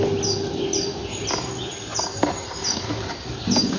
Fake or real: real